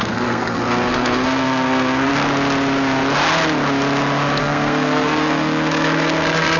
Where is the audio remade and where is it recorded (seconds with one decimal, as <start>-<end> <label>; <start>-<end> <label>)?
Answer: 0.0-2.1 remade; 2.1-4.4 recorded; 4.4-6.6 remade